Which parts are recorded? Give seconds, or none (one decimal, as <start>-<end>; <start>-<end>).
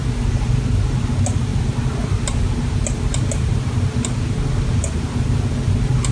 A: 0.0-6.1